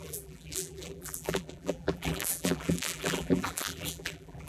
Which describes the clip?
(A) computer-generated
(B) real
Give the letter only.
A